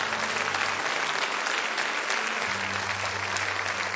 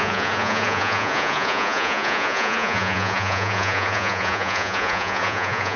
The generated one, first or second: second